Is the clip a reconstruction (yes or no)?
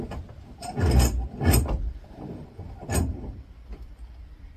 no